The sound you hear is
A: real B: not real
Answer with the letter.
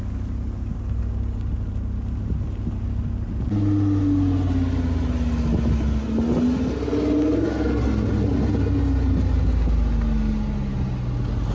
A